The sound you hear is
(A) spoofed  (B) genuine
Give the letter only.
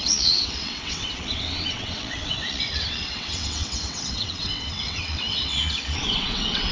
A